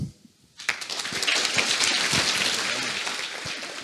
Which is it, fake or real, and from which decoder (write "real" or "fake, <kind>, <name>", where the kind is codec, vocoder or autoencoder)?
real